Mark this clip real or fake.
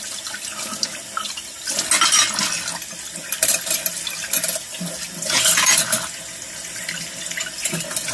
real